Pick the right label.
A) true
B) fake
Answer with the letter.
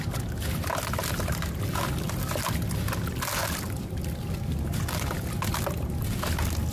A